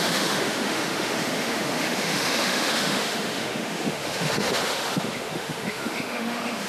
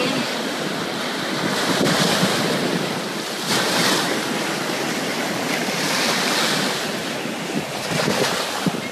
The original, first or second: second